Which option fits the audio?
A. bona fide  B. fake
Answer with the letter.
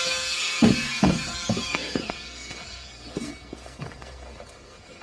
B